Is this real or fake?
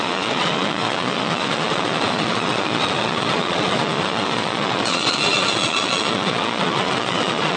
fake